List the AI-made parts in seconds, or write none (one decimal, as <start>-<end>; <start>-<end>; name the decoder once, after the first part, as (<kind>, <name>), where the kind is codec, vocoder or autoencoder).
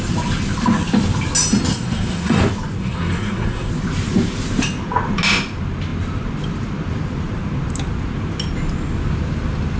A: 1.7-2.4 (codec, SNAC); 2.8-3.7